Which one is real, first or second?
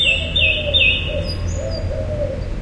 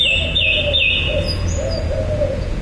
first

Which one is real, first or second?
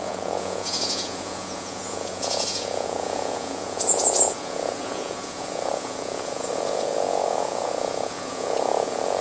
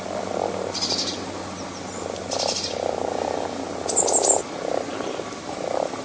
second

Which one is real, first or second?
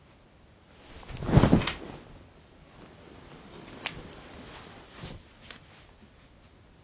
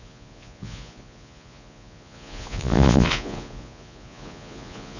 first